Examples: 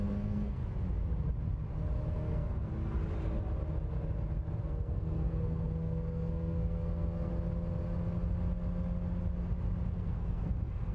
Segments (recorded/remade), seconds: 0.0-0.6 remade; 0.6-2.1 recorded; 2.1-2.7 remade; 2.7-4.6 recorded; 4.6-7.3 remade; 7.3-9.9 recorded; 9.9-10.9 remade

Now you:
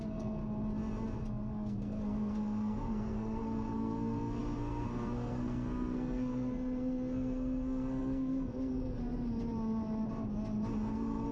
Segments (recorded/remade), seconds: 0.0-0.4 remade; 0.4-1.2 recorded; 1.2-9.0 remade; 9.0-10.9 recorded; 10.9-11.3 remade

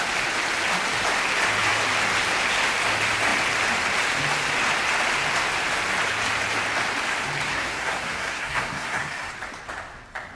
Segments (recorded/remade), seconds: 0.0-7.5 recorded; 7.5-9.3 remade; 9.3-10.3 recorded

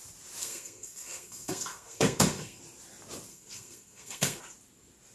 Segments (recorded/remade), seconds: 0.0-0.4 recorded; 0.4-2.6 remade; 2.6-3.3 recorded; 3.3-4.4 remade; 4.4-5.1 recorded

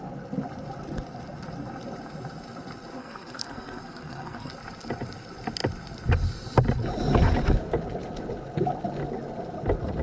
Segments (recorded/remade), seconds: 0.0-3.0 recorded; 3.0-4.5 remade; 4.5-10.0 recorded